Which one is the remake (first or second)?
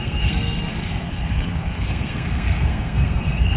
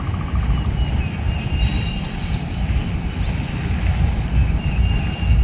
first